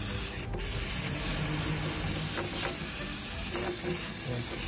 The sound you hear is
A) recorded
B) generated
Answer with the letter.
A